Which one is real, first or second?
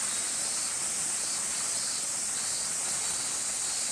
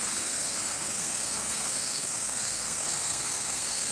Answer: first